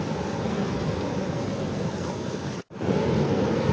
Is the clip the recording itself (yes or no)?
no